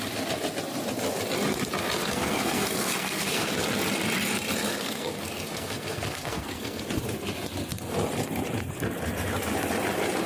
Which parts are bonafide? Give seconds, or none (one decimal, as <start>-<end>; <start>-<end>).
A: 0.0-2.0; 3.5-4.7; 6.8-10.3